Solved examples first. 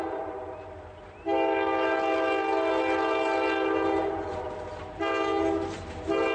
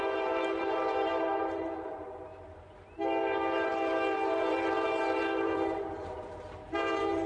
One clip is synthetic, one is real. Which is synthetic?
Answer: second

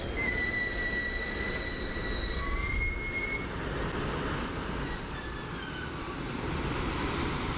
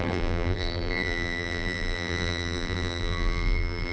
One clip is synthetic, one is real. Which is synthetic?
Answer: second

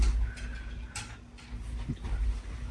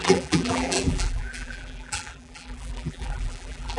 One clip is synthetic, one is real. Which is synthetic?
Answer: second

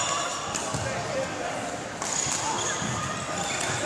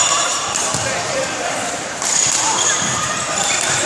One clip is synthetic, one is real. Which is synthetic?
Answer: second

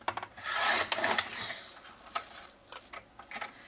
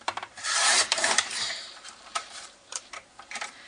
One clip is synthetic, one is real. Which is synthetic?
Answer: second